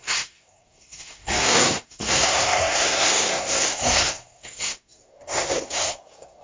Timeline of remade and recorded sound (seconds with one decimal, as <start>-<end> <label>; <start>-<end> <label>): 0.0-6.4 remade